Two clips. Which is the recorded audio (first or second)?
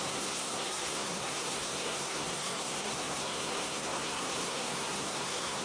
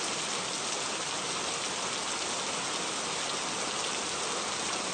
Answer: second